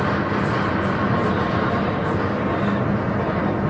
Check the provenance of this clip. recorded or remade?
recorded